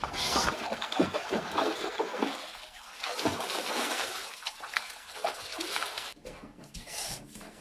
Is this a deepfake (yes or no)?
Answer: yes